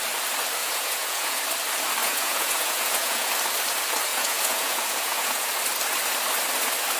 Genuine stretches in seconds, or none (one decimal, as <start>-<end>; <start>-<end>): 0.0-0.6; 1.4-2.0; 3.3-4.1; 5.5-7.0